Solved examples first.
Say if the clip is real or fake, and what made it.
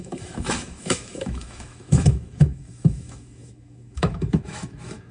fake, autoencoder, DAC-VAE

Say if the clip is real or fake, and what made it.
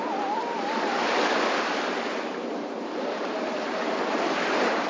fake, vocoder, BigVGAN v2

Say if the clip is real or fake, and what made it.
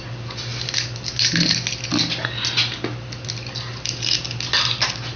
real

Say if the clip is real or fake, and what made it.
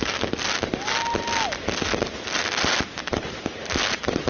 real